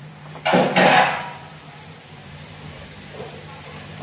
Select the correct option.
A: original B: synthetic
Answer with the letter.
B